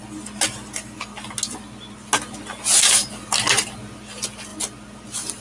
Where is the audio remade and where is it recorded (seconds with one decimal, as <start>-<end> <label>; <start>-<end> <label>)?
0.0-5.4 recorded